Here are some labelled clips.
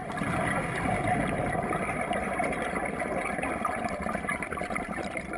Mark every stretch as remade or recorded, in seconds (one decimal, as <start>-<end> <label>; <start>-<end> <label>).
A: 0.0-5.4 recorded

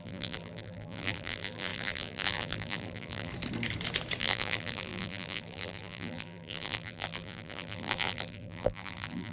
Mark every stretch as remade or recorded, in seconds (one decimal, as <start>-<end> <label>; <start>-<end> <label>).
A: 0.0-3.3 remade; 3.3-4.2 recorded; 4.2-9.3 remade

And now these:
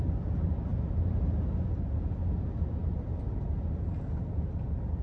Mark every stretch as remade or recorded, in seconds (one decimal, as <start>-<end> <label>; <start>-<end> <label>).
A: 0.0-5.0 recorded